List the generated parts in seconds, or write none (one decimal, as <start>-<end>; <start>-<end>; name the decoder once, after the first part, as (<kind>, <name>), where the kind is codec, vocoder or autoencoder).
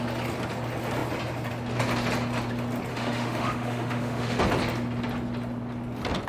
2.9-4.4 (autoencoder, DAC-VAE)